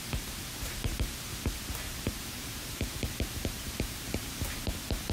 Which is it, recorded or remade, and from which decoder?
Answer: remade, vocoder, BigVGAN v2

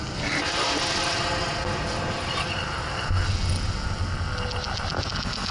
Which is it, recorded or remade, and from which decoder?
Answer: recorded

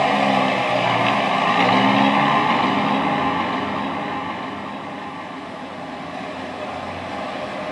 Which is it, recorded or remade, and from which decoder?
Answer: recorded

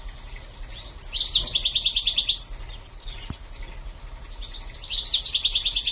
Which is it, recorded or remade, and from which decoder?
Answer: recorded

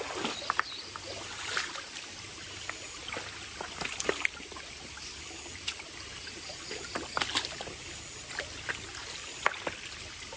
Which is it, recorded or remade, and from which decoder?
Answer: recorded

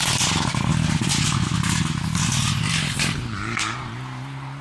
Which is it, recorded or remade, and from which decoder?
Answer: recorded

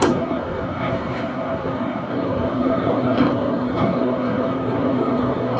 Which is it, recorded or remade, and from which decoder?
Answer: remade, codec, SNAC